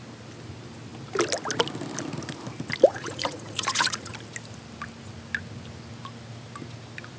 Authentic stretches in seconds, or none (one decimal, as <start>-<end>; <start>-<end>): 0.0-2.9; 4.1-7.2